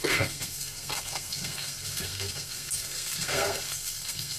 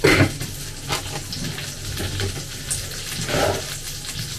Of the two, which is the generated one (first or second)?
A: first